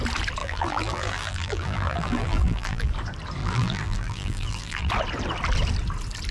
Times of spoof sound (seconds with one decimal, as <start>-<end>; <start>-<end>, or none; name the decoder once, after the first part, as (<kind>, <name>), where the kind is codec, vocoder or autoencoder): 0.4-2.9 (vocoder, BigVGAN v2); 3.4-4.9